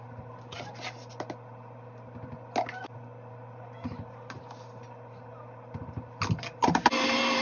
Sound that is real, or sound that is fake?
real